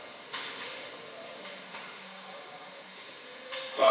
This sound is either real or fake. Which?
fake